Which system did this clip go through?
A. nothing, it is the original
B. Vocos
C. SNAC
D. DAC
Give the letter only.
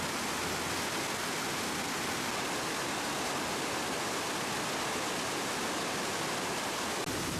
A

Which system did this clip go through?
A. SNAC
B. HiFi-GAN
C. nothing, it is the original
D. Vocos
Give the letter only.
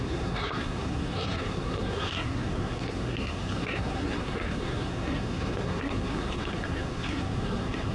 A